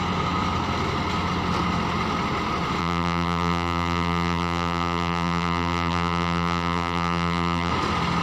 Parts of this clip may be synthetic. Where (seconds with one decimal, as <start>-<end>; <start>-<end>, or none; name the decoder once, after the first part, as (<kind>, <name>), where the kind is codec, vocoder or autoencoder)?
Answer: 2.8-7.7 (vocoder, BigVGAN v2)